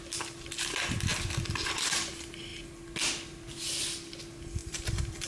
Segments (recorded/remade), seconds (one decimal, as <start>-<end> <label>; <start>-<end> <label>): 0.0-1.1 recorded; 1.1-2.1 remade; 2.1-4.6 recorded; 4.6-5.3 remade